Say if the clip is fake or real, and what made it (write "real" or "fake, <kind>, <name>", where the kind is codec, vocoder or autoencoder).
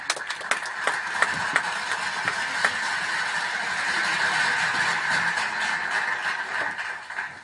real